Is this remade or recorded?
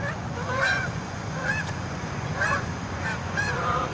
remade